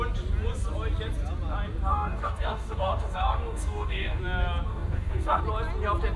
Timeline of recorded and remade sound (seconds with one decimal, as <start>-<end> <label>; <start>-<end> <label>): 0.0-1.9 recorded; 1.9-4.2 remade; 4.2-4.7 recorded; 4.7-5.4 remade; 5.4-6.2 recorded